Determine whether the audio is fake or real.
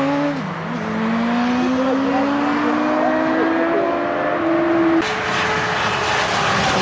real